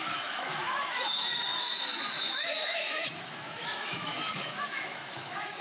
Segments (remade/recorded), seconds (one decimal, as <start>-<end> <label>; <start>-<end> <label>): 0.0-5.6 remade